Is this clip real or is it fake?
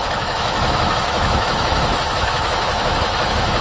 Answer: fake